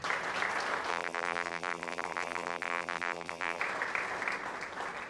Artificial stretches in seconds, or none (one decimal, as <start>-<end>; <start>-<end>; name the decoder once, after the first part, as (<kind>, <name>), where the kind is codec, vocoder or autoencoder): 0.9-3.6 (vocoder, BigVGAN v2)